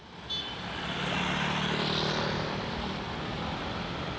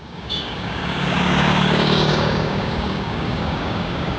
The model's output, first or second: second